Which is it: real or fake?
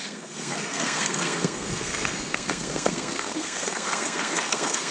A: fake